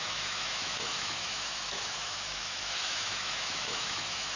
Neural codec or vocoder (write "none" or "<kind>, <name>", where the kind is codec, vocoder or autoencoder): autoencoder, DAC-VAE